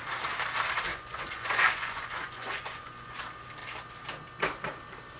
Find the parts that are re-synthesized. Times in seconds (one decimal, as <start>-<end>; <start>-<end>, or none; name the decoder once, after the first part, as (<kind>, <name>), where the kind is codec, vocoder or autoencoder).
0.9-3.2 (vocoder, Vocos)